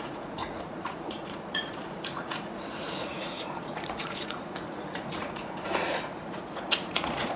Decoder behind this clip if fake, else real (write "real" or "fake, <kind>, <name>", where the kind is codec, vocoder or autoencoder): fake, vocoder, Vocos